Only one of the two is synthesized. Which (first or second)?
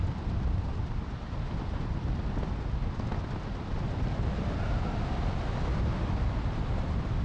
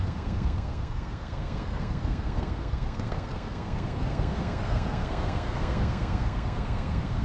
second